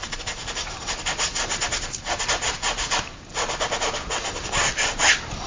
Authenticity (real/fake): real